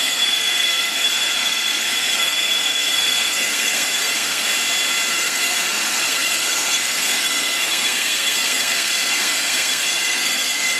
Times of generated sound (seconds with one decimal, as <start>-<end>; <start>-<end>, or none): 0.0-4.5; 5.1-10.8